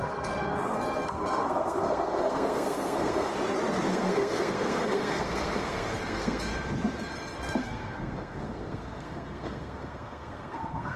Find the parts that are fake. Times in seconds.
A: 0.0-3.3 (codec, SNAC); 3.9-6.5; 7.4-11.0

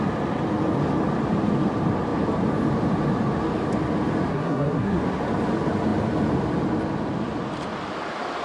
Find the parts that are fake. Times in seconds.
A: 4.3-5.0 (codec, SNAC)

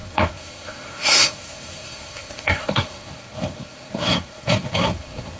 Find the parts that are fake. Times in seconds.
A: 0.0-5.4 (codec, SNAC)

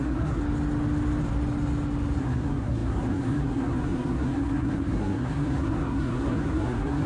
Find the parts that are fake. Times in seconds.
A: 0.0-0.4 (codec, SNAC); 2.2-7.1

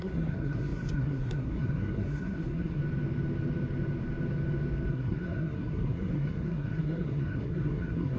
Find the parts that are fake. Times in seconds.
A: 0.0-2.8 (codec, SNAC); 4.9-8.2

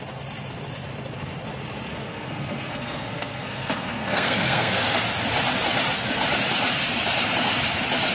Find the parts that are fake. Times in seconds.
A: 1.9-5.0 (codec, SNAC)